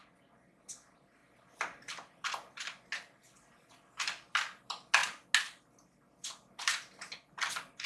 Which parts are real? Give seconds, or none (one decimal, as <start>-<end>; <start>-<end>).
0.0-7.9